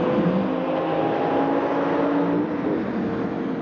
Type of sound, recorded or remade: recorded